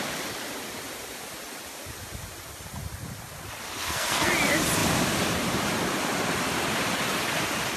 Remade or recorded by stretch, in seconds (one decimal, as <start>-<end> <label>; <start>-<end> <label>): 0.0-3.8 recorded; 3.8-4.3 remade; 4.3-7.8 recorded